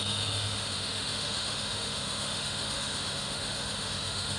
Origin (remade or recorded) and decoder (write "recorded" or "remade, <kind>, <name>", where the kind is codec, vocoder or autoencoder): remade, autoencoder, DAC-VAE